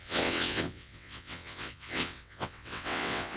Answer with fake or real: fake